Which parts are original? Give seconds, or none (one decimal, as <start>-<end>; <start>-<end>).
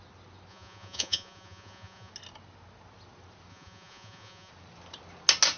0.0-0.5; 2.1-3.5; 4.5-5.6